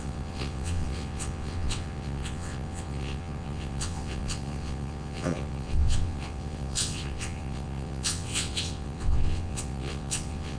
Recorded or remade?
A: remade